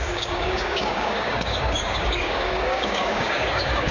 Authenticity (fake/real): fake